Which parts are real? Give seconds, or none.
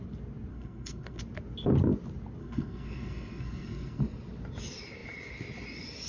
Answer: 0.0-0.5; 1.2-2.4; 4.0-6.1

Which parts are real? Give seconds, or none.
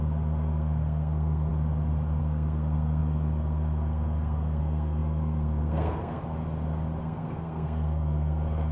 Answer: 1.5-2.2; 6.2-7.0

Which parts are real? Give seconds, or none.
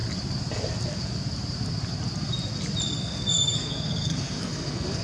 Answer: 0.0-3.0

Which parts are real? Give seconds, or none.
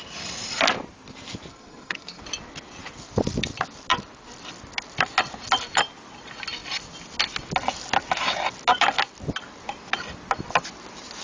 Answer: 0.0-1.5; 2.2-11.2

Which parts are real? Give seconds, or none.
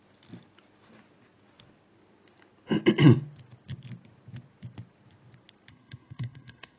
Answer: 0.0-5.7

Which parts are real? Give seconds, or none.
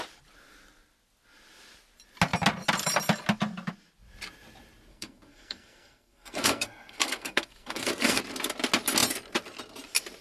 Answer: 0.0-4.9; 8.2-10.2